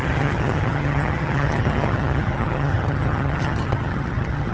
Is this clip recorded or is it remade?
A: remade